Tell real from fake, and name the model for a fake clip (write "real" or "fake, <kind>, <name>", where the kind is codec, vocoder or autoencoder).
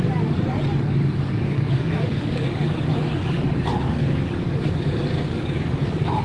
fake, codec, DAC